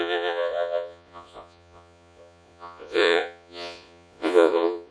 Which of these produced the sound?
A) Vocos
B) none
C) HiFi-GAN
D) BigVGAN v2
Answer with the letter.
A